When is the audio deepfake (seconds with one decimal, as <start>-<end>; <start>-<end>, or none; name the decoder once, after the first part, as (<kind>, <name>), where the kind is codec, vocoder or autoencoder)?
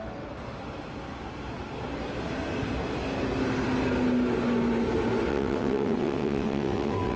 5.3-7.2 (vocoder, WaveNeXt)